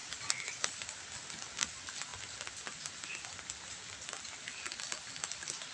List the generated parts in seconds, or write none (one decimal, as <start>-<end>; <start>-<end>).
none